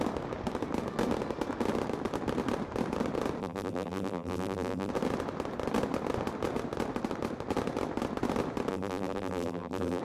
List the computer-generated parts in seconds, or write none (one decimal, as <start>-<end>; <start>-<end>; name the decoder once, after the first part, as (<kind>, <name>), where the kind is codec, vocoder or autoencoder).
3.4-4.9 (vocoder, BigVGAN v2); 8.7-10.0